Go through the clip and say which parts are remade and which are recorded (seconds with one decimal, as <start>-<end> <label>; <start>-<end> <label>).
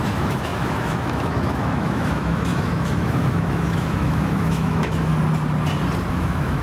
0.0-5.1 remade; 5.1-6.1 recorded; 6.1-6.6 remade